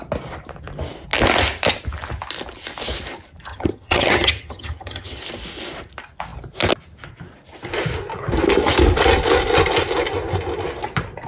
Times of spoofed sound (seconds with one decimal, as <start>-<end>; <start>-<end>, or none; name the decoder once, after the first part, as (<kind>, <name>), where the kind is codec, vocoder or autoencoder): 3.5-5.2 (vocoder, HiFi-GAN)